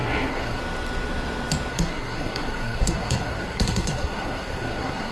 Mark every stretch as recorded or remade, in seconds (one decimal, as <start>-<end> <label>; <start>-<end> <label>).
0.0-0.6 remade; 0.6-1.7 recorded; 1.7-5.1 remade